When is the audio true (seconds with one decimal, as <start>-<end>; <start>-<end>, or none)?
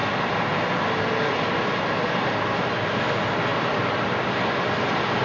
0.0-3.5; 4.0-5.2